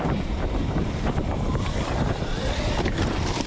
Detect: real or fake fake